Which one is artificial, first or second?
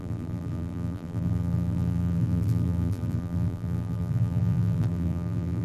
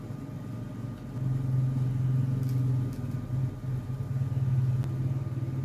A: first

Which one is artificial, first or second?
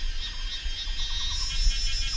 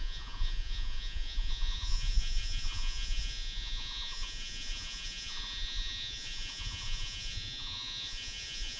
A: second